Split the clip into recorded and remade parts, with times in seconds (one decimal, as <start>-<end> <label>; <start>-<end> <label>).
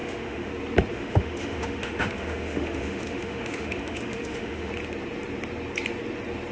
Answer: 0.0-0.5 remade; 0.5-0.9 recorded; 0.9-4.7 remade; 4.7-6.5 recorded